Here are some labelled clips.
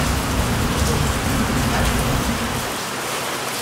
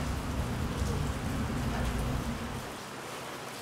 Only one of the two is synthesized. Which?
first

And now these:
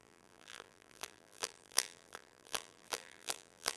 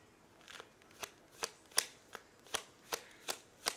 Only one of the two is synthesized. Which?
first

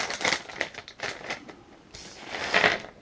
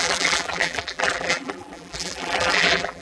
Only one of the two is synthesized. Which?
second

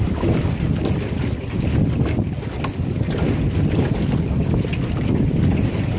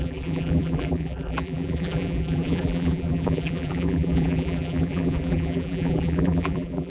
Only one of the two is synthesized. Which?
second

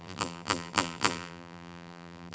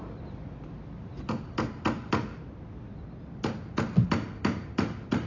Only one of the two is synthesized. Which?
first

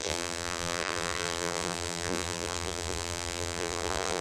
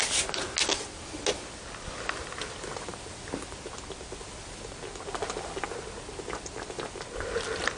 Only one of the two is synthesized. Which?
first